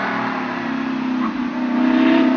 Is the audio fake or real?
real